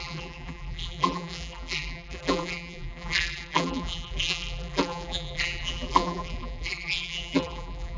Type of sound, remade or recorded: remade